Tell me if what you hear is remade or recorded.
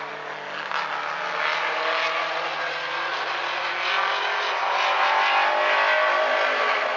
recorded